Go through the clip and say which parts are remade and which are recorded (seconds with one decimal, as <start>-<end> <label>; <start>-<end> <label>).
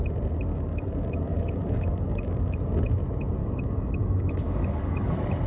0.0-0.5 recorded; 0.5-2.6 remade; 2.6-3.4 recorded; 3.4-5.1 remade; 5.1-5.5 recorded